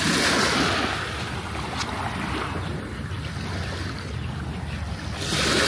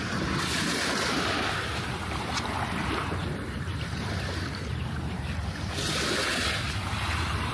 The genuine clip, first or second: first